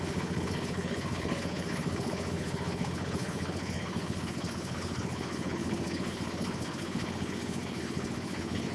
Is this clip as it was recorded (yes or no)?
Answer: no